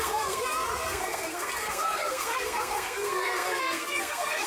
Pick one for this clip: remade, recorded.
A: remade